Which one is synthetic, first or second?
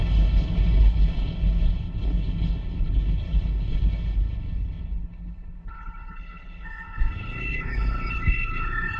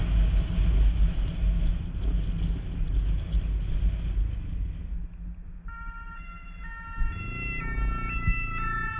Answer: first